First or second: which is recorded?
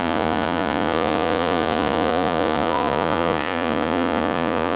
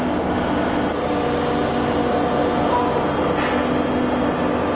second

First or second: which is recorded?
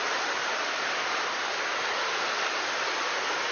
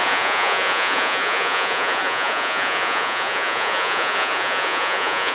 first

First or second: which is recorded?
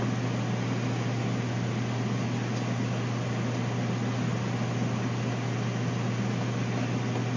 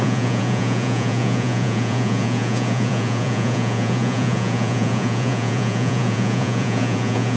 first